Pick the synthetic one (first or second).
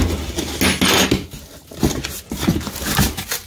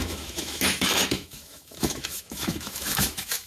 second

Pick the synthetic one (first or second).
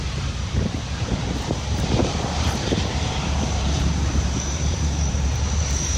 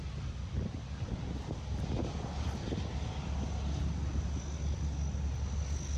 first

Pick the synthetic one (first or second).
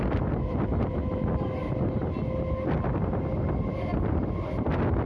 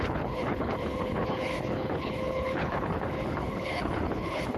second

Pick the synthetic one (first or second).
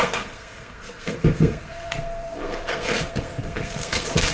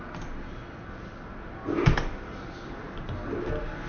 first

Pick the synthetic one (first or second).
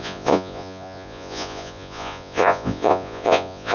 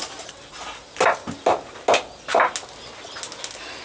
first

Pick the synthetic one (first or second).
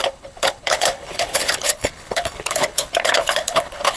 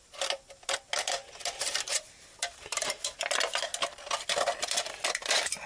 first